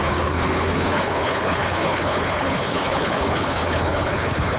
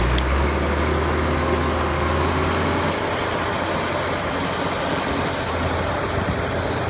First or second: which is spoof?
first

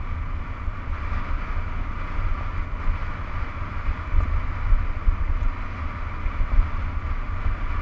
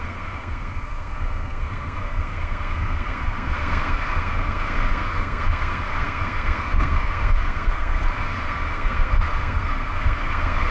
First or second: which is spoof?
second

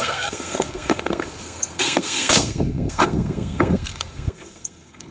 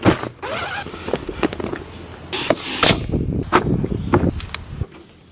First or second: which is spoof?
first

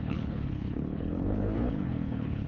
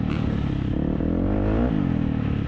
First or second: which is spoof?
first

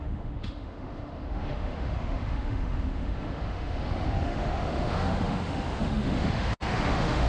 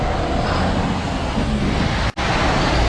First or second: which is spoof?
first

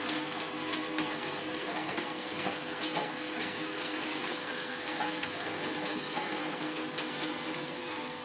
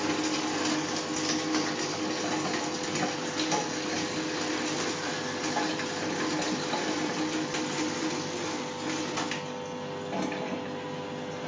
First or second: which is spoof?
first